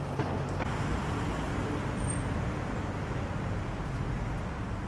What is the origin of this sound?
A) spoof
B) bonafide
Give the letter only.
B